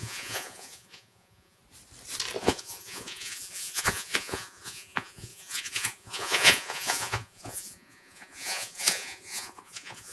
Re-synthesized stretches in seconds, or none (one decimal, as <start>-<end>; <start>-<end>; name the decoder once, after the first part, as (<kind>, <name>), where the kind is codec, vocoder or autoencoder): 0.0-1.6 (vocoder, Vocos); 2.4-10.1